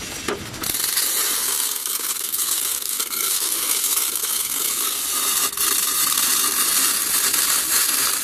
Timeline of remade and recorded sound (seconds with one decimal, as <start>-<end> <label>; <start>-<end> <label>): 0.0-1.4 recorded; 1.4-5.0 remade; 5.0-8.2 recorded

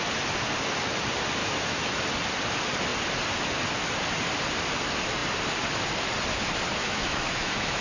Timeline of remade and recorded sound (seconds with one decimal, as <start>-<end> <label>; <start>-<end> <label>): 0.0-1.4 recorded; 1.4-2.0 remade; 2.0-6.8 recorded; 6.8-7.8 remade

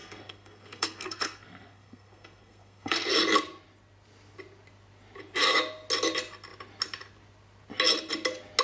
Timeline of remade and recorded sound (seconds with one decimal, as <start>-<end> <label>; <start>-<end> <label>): 0.0-3.1 remade; 3.1-8.6 recorded

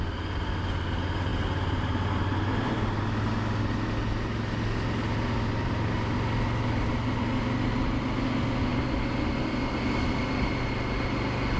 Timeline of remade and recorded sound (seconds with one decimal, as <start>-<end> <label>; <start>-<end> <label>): 0.0-11.6 recorded

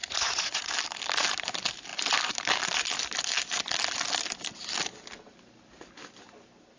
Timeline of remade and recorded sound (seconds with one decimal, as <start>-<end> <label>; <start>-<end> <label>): 0.0-0.7 remade; 0.7-6.8 recorded

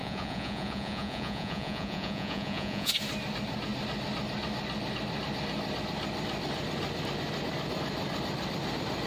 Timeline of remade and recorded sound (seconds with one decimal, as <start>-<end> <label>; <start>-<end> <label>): 0.0-2.9 remade; 2.9-9.1 recorded